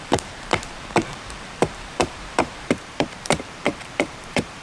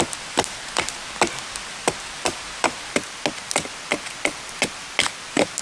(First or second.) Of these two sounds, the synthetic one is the first